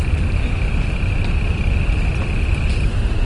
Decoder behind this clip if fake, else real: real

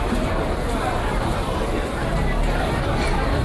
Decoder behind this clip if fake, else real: fake, vocoder, BigVGAN v2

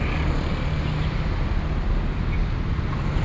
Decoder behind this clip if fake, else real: real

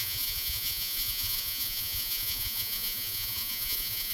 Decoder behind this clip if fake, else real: fake, vocoder, Vocos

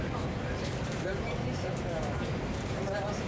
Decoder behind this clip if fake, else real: fake, vocoder, BigVGAN v2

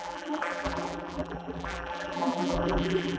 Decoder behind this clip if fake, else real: fake, vocoder, BigVGAN v2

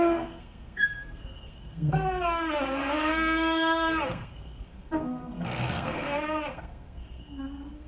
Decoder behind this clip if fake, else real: fake, codec, SNAC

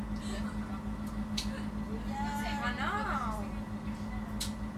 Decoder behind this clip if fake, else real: real